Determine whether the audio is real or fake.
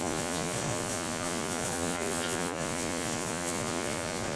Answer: fake